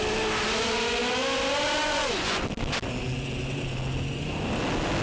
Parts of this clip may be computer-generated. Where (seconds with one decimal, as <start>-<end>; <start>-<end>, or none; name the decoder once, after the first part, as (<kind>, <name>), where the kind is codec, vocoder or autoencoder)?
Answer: 1.8-2.4 (vocoder, Vocos)